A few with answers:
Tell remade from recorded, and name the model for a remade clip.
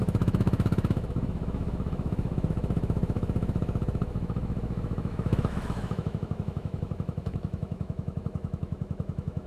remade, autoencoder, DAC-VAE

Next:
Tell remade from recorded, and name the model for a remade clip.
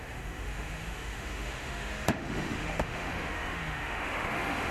remade, autoencoder, DAC-VAE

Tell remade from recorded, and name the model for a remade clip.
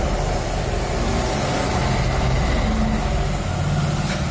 recorded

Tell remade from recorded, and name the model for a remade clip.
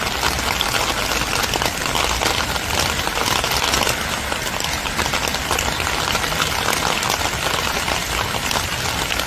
recorded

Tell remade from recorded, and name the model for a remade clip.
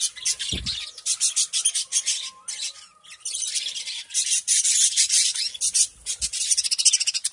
recorded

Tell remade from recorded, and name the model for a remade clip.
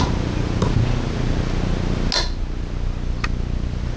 recorded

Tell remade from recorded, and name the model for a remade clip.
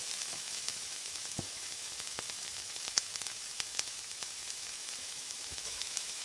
remade, autoencoder, DAC-VAE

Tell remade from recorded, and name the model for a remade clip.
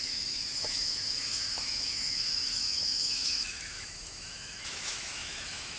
remade, autoencoder, DAC-VAE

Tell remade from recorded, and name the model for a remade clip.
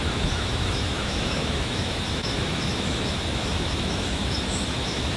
remade, autoencoder, DAC-VAE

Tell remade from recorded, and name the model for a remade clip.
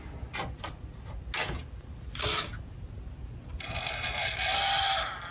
recorded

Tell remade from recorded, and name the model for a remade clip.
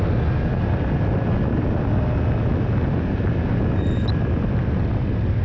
recorded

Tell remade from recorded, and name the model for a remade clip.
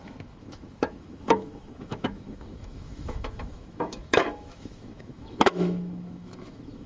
remade, autoencoder, DAC-VAE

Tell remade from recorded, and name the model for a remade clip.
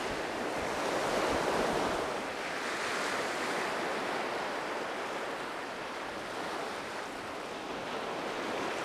recorded